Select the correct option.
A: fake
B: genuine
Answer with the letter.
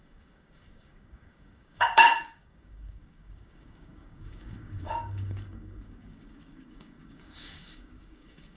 A